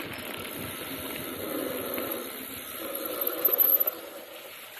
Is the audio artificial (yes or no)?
no